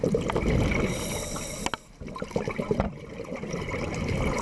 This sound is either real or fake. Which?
real